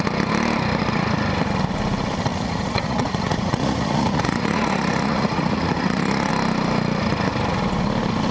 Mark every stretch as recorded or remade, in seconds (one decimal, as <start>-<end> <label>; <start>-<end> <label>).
0.0-2.3 recorded; 2.3-6.3 remade; 6.3-8.3 recorded